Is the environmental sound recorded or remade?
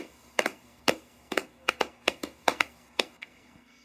remade